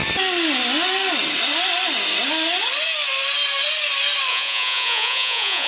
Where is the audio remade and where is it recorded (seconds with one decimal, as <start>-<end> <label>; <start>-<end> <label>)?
0.0-4.3 recorded; 4.3-5.7 remade